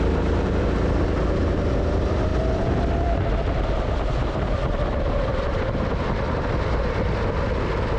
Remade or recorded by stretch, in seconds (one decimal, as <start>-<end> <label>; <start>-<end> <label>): 0.0-2.3 recorded; 2.3-7.1 remade; 7.1-8.0 recorded